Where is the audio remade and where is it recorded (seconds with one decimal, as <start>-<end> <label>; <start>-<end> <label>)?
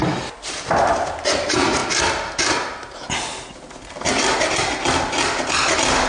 0.0-1.0 remade; 1.0-6.1 recorded